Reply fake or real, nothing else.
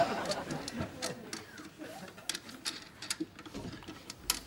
real